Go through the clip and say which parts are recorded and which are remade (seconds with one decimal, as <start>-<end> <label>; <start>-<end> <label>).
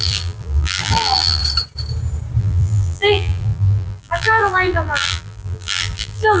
0.0-1.4 remade; 1.4-2.4 recorded; 2.4-6.4 remade